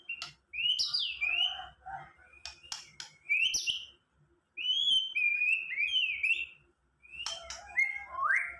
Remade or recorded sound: recorded